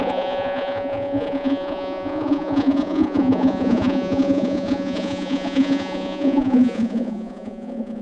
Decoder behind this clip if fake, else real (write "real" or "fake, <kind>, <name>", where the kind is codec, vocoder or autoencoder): fake, vocoder, Vocos